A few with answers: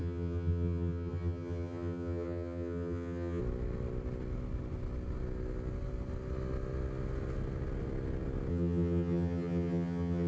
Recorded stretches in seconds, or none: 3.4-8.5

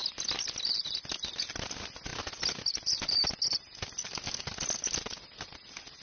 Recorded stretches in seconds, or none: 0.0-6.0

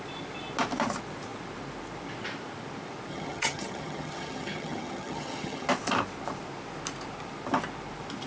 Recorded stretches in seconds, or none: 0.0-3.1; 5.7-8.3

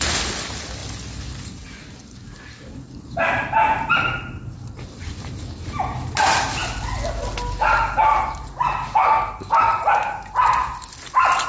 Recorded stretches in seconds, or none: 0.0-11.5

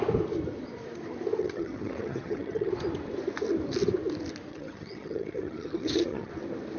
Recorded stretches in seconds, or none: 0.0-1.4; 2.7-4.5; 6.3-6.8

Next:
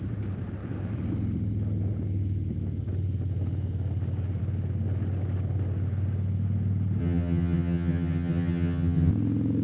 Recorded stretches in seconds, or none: 0.0-7.0; 9.1-9.6

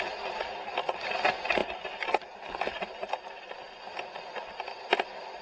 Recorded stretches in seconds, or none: 0.0-5.4